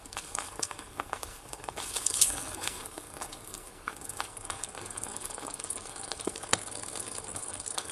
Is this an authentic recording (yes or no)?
no